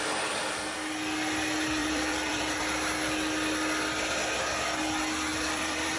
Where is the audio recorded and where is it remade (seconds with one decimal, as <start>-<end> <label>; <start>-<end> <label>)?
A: 0.0-1.8 recorded; 1.8-2.6 remade; 2.6-5.3 recorded; 5.3-6.0 remade